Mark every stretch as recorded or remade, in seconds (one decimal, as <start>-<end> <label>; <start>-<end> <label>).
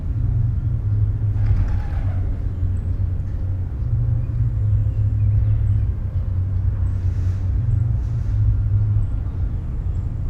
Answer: 0.0-10.3 recorded